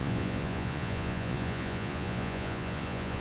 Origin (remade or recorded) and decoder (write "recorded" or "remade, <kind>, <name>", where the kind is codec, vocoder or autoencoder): remade, vocoder, Vocos